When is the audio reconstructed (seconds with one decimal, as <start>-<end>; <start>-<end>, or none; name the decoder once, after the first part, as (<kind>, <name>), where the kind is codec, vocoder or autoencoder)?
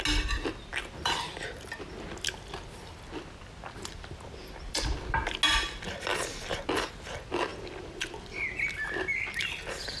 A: 7.5-8.4 (vocoder, BigVGAN v2)